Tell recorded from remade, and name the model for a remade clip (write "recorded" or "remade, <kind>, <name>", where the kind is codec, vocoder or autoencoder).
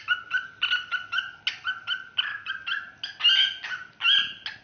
recorded